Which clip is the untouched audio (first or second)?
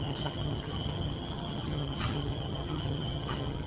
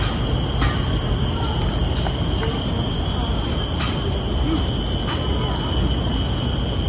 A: second